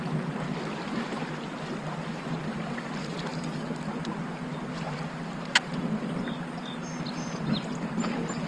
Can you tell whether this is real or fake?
real